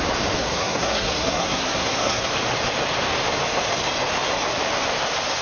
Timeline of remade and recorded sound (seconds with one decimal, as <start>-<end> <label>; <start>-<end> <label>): 0.0-0.4 recorded; 0.4-2.3 remade; 2.3-5.4 recorded